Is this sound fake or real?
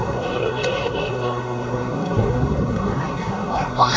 fake